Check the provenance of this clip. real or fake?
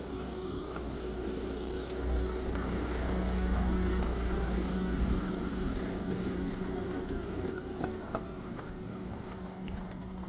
fake